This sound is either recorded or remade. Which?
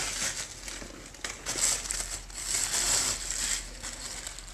recorded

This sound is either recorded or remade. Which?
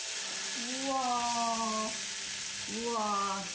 recorded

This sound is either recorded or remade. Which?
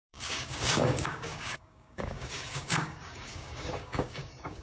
remade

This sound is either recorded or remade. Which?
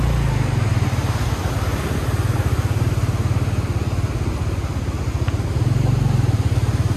recorded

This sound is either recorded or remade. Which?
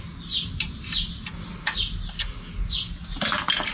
recorded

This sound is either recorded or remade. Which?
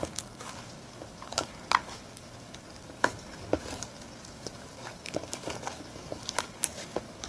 remade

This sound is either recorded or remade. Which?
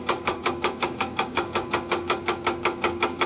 remade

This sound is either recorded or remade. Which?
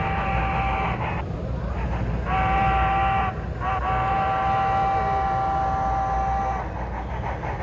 recorded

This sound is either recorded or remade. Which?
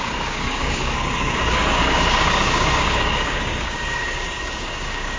remade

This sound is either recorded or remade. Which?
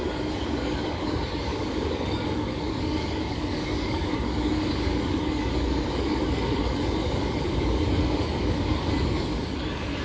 remade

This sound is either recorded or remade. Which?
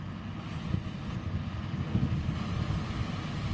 recorded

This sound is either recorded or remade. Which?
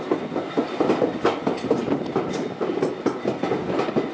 recorded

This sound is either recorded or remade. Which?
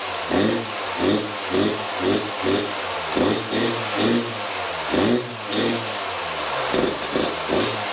recorded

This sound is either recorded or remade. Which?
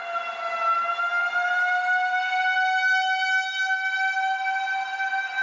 recorded